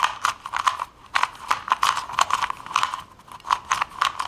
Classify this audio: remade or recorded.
recorded